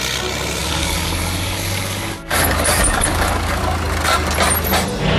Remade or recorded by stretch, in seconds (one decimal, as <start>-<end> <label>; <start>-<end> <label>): 0.0-0.6 recorded; 0.6-3.6 remade; 3.6-5.2 recorded